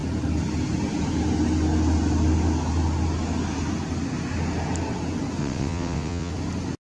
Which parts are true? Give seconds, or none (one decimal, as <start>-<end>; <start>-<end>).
0.0-5.4; 6.3-6.9